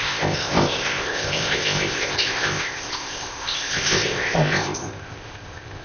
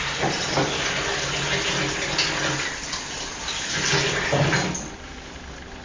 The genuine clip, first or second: second